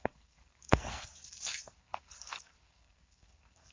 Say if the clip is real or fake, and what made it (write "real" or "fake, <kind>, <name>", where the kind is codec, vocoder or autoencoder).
fake, codec, SNAC